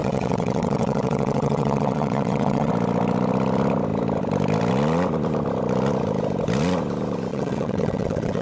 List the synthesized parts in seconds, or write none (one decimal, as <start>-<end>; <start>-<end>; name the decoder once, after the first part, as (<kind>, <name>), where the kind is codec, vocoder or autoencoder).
0.0-2.7 (vocoder, WaveNeXt); 7.3-8.4